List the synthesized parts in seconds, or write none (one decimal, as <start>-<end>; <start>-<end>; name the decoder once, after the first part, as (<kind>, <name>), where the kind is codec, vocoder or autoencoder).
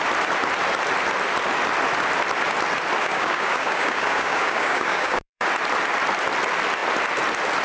3.0-5.5 (codec, DAC)